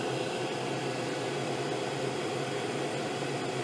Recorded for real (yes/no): yes